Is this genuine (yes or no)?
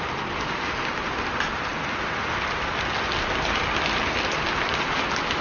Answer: yes